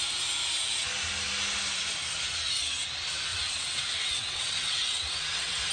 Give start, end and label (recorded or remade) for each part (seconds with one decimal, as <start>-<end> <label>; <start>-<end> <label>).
0.0-3.3 recorded; 3.3-5.7 remade